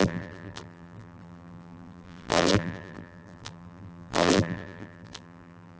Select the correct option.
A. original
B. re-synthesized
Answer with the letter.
B